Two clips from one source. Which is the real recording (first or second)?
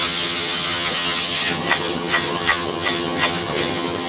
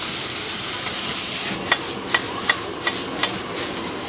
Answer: second